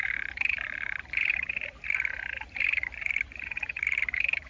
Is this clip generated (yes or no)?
yes